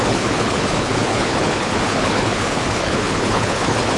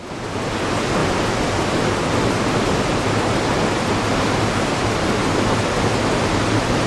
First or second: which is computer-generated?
first